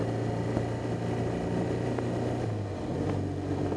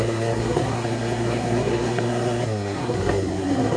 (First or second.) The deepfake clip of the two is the second